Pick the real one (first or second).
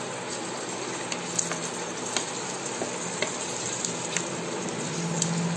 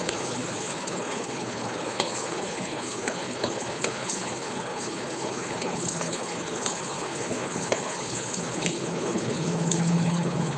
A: first